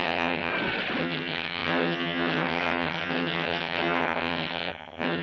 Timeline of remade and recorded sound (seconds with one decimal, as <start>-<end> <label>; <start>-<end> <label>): 0.0-0.5 remade; 0.5-1.0 recorded; 1.0-5.2 remade